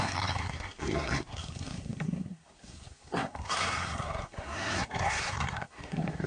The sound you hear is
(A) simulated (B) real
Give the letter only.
A